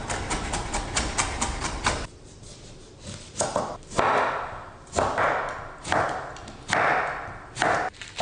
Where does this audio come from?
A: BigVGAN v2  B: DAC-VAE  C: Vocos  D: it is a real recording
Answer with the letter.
D